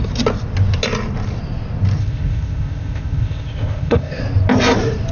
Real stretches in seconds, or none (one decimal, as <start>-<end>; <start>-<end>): 0.0-2.0; 4.2-5.1